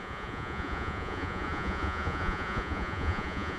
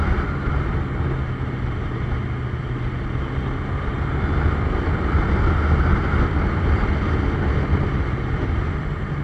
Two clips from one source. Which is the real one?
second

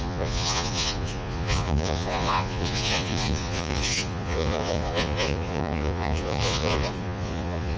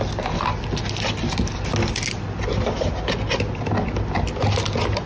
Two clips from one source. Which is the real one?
second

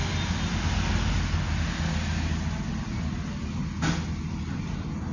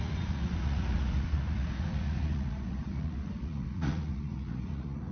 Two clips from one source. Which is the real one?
first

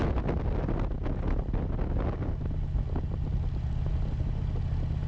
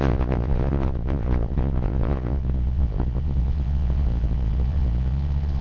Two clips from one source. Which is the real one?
first